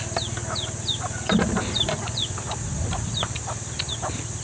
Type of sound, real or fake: real